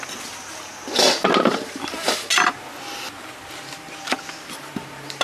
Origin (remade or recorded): recorded